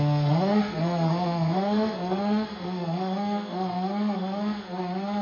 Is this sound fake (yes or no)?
yes